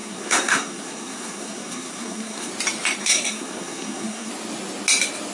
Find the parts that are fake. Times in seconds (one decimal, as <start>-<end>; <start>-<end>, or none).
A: 0.0-2.5; 3.0-4.3